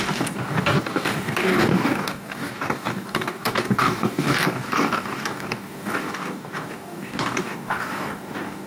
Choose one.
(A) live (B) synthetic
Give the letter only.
B